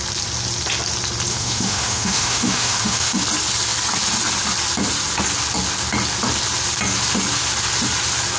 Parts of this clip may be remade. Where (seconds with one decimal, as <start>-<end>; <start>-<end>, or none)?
1.3-3.2